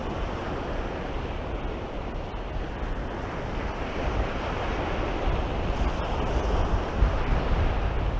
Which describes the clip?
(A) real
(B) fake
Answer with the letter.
A